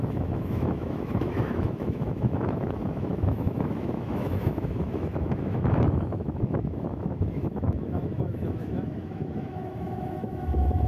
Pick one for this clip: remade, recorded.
remade